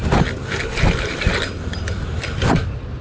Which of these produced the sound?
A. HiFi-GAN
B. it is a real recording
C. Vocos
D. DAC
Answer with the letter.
B